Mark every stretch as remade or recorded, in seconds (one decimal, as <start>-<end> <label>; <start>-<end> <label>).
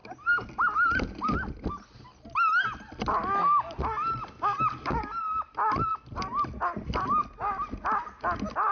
0.0-8.7 recorded